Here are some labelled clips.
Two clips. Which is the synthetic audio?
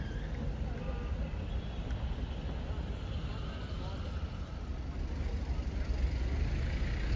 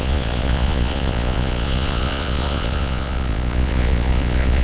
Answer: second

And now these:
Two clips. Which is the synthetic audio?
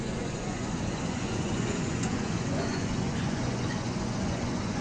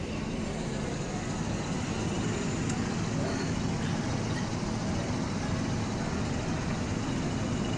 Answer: first